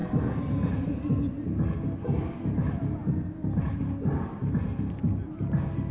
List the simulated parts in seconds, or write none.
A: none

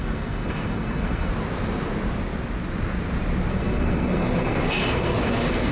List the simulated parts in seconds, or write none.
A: 0.0-1.3 (codec, SNAC); 3.5-5.7